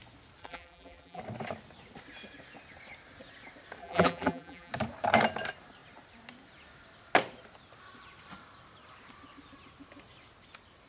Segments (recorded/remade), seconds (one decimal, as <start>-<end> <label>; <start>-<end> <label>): 0.0-0.4 recorded; 0.4-1.2 remade; 1.2-3.8 recorded; 3.8-4.7 remade; 4.7-10.9 recorded